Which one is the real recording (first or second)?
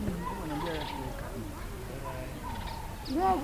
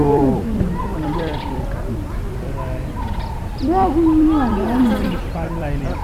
first